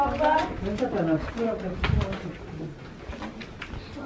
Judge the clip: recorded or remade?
recorded